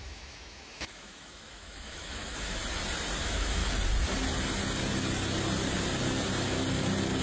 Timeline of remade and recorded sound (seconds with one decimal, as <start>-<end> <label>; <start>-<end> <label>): 0.0-2.6 remade; 2.6-3.2 recorded; 3.2-3.6 remade; 3.6-7.2 recorded